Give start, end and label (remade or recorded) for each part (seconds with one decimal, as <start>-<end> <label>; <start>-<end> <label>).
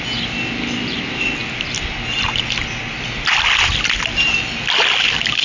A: 0.0-5.4 recorded